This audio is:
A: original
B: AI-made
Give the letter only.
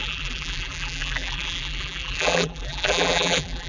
B